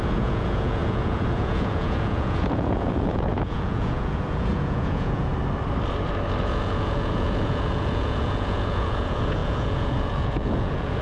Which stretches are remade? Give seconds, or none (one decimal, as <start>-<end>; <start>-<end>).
0.0-5.3; 6.4-11.0